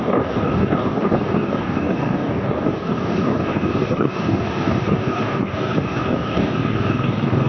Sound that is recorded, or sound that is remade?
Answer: remade